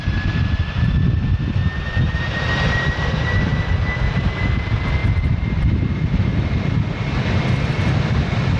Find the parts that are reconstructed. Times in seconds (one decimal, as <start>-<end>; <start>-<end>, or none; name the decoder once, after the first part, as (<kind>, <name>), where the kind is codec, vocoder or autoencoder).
0.0-3.5 (vocoder, BigVGAN v2); 4.6-8.6